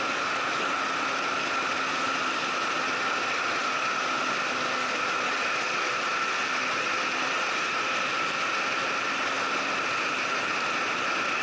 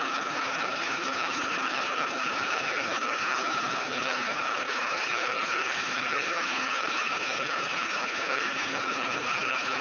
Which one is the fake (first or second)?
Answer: second